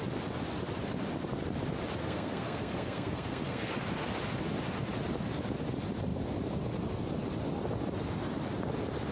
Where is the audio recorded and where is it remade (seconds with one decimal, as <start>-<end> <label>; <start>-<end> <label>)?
0.0-2.0 recorded; 2.0-3.7 remade; 3.7-9.1 recorded